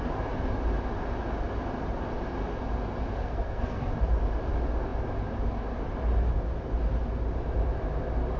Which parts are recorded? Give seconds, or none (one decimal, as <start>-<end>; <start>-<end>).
0.0-3.2; 3.9-8.4